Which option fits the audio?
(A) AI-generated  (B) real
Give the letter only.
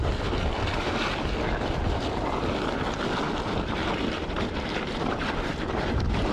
B